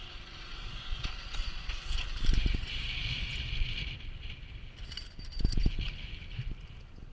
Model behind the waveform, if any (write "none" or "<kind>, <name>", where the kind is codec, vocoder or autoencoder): none